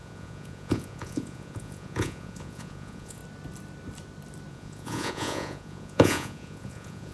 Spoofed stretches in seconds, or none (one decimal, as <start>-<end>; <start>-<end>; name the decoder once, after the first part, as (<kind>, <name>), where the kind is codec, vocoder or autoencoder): 0.0-3.2 (vocoder, Vocos); 4.5-7.1